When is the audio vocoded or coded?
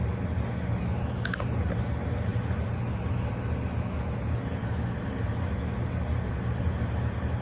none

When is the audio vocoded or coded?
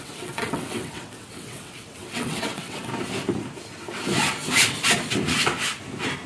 0.0-2.9 (vocoder, WaveNeXt)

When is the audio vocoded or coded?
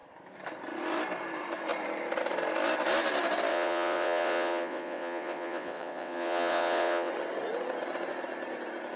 3.5-7.1 (vocoder, WaveNeXt)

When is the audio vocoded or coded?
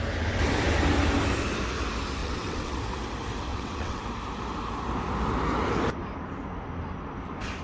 2.2-2.8 (vocoder, WaveNeXt); 3.5-4.0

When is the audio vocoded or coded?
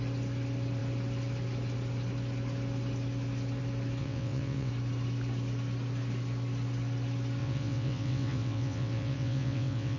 4.0-4.7 (vocoder, WaveNeXt); 7.4-10.0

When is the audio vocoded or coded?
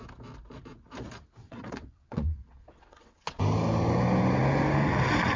1.4-3.4 (vocoder, WaveNeXt)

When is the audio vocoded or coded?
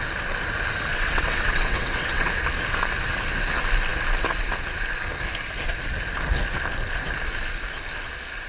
0.9-2.3 (vocoder, WaveNeXt)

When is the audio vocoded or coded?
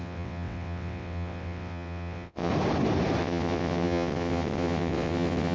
0.0-2.5 (vocoder, WaveNeXt); 3.2-5.5